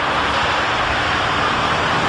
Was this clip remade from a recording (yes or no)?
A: no